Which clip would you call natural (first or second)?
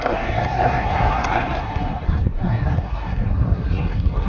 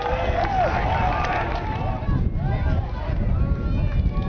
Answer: second